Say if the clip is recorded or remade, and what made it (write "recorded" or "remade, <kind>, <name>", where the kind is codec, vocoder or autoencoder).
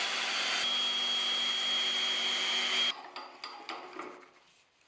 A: recorded